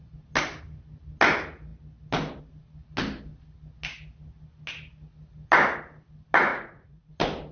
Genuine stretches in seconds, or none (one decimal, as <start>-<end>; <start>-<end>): 0.0-6.5; 7.1-7.5

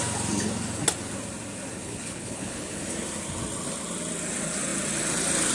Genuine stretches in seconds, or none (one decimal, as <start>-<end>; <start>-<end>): 0.0-1.8; 2.8-5.5

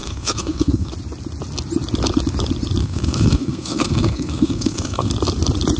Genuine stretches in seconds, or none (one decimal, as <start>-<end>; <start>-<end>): 0.9-2.8; 5.1-5.8

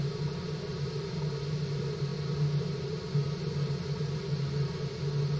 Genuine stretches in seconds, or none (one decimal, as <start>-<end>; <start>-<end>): 0.0-5.4